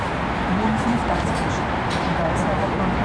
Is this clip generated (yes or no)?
no